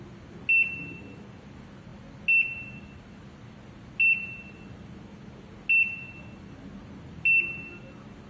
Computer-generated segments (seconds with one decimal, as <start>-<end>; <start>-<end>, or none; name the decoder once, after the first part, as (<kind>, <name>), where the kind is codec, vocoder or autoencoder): none